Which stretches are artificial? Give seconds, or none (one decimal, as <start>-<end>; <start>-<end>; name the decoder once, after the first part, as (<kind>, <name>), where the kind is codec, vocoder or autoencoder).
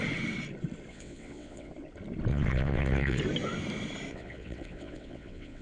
0.9-1.7 (vocoder, WaveNeXt); 2.3-3.2; 4.1-5.6